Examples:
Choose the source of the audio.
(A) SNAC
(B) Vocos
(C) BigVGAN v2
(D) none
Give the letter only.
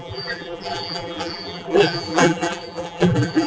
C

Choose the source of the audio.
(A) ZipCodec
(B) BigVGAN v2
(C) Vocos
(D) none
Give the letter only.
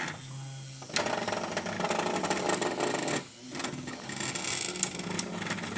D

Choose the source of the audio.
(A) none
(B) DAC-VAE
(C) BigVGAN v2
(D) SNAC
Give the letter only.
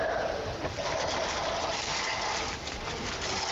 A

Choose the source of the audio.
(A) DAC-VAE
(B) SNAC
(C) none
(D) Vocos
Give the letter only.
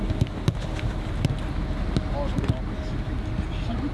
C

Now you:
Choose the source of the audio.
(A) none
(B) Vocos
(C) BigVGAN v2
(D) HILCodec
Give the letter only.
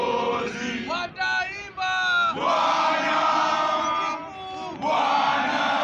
A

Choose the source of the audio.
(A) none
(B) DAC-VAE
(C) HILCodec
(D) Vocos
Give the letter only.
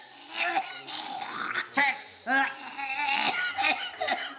A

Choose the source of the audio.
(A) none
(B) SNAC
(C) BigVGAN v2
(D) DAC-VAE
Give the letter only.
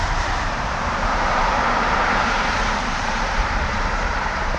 C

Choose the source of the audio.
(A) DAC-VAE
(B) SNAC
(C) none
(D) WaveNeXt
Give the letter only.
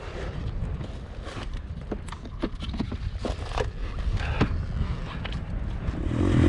C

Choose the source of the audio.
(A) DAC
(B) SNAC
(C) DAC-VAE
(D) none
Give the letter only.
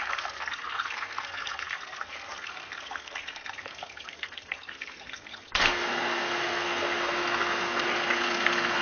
B